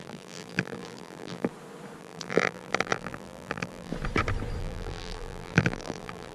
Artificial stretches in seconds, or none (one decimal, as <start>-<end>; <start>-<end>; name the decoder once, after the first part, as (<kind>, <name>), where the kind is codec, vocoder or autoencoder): 0.0-1.5 (vocoder, BigVGAN v2); 2.0-3.9; 4.6-6.3